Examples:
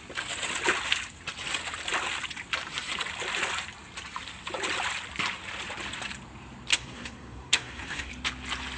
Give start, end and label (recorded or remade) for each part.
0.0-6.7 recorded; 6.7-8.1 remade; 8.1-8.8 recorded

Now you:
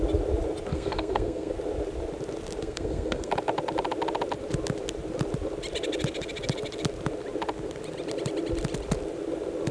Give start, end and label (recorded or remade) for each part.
0.0-0.7 recorded; 0.7-1.5 remade; 1.5-2.6 recorded; 2.6-3.3 remade; 3.3-9.7 recorded